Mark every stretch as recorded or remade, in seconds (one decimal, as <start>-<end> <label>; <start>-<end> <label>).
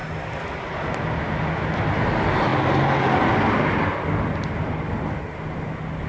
0.0-6.1 recorded